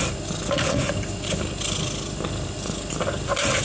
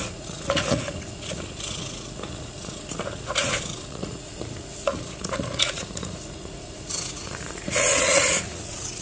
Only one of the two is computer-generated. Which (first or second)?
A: second